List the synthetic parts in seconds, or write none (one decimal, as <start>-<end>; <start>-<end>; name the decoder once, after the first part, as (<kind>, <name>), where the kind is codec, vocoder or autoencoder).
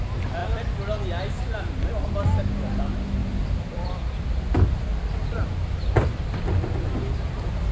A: 3.2-7.7 (vocoder, BigVGAN v2)